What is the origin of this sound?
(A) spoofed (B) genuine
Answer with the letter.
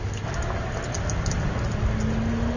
B